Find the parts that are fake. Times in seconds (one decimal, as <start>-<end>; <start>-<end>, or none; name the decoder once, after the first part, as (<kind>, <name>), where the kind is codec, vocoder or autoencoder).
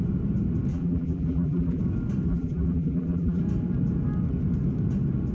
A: 0.7-1.8 (vocoder, BigVGAN v2); 2.3-3.4